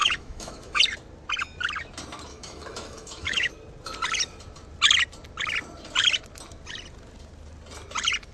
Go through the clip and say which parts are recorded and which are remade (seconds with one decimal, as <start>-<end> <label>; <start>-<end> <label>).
0.0-0.8 remade; 0.8-2.3 recorded; 2.3-3.5 remade; 3.5-8.3 recorded